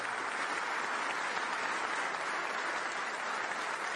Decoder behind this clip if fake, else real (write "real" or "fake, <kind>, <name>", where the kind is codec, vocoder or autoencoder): real